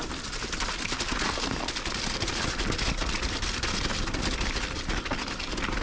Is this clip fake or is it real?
real